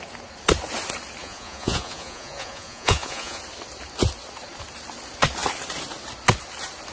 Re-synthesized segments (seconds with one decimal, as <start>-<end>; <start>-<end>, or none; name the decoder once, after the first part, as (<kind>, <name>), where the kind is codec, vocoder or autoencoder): 1.2-3.4 (vocoder, Vocos)